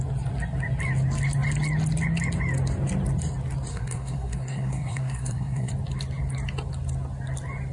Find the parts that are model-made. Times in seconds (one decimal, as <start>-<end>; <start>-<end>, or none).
3.7-5.7

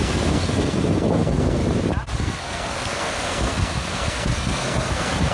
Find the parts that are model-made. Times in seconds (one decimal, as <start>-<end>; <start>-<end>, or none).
0.0-1.6; 2.2-5.3

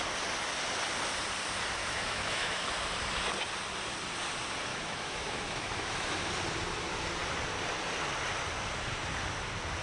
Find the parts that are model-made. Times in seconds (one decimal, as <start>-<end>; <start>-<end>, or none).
1.8-2.7; 4.7-6.2

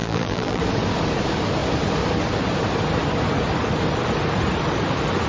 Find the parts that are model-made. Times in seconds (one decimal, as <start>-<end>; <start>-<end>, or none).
0.0-0.6

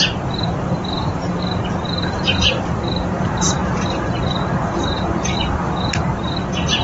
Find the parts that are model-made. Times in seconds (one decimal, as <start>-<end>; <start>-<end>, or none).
0.0-6.8

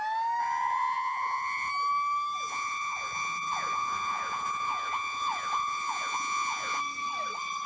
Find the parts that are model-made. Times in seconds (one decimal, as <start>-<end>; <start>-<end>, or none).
0.4-1.7; 2.5-6.8

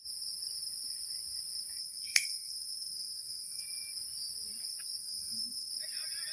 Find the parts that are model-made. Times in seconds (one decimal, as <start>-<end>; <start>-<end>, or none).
1.8-3.6; 5.0-5.7

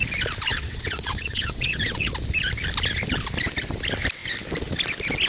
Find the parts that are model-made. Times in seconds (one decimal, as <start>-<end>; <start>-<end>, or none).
0.5-2.1